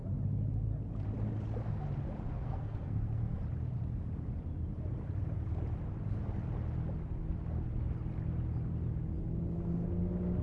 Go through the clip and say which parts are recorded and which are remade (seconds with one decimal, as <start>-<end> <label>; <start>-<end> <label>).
0.0-2.3 recorded; 2.3-3.4 remade; 3.4-10.4 recorded